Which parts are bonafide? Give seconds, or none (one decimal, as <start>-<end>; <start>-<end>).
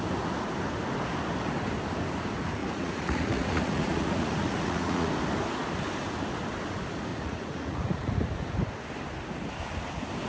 0.0-2.6; 5.1-7.1; 8.1-10.3